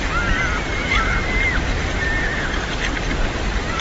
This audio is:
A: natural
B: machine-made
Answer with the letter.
A